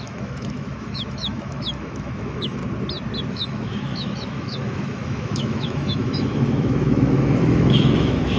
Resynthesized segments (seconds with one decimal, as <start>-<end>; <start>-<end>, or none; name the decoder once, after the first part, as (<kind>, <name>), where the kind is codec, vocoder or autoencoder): 0.0-2.6 (autoencoder, DAC-VAE); 3.3-8.4